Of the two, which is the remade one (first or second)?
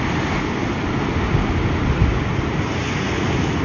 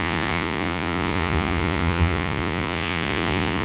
second